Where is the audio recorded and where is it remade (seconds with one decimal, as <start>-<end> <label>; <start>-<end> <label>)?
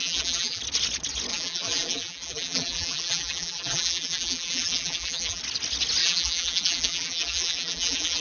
0.0-0.6 remade; 0.6-1.3 recorded; 1.3-5.4 remade; 5.4-6.0 recorded; 6.0-8.2 remade